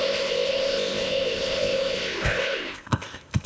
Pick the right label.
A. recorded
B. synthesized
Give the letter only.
B